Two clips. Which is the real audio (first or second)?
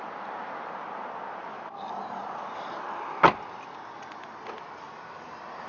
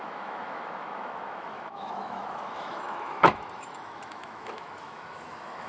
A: first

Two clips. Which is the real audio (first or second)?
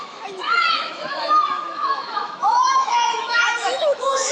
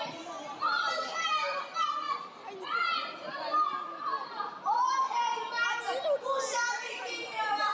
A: second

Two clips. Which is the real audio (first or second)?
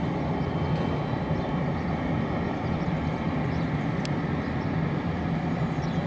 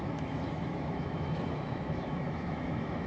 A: first